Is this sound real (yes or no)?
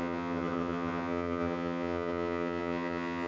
no